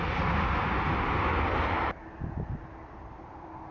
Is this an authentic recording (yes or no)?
yes